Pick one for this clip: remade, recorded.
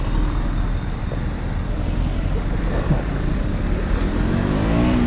recorded